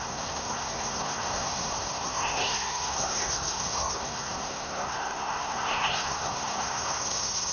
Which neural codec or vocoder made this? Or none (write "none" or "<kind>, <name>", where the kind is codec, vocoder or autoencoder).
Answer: codec, SNAC